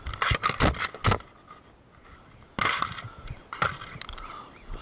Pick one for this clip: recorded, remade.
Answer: recorded